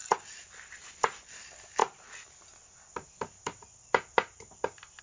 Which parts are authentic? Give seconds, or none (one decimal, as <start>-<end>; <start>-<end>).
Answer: 0.0-5.0